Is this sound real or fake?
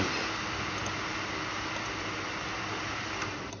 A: real